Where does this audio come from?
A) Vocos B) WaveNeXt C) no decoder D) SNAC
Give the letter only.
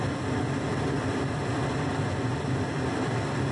C